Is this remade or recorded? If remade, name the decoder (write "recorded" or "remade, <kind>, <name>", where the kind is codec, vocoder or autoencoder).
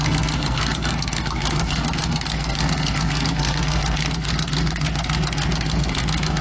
remade, codec, SNAC